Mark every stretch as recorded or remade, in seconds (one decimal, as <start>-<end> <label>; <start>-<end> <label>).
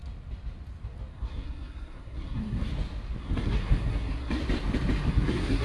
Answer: 0.0-1.1 recorded; 1.1-2.7 remade; 2.7-3.2 recorded; 3.2-4.4 remade; 4.4-5.1 recorded; 5.1-5.6 remade